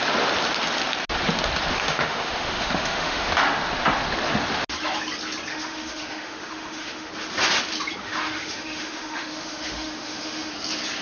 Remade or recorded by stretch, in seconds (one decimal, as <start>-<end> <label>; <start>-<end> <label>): 0.0-1.7 recorded; 1.7-3.3 remade; 3.3-5.5 recorded; 5.5-7.1 remade; 7.1-8.0 recorded; 8.0-10.5 remade; 10.5-11.0 recorded